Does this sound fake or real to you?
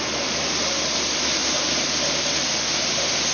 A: real